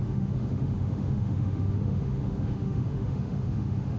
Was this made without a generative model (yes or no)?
no